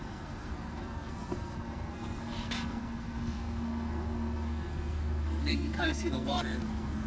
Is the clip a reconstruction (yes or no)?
yes